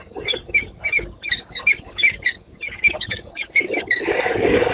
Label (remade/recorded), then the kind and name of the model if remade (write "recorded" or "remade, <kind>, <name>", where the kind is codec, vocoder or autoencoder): remade, codec, DAC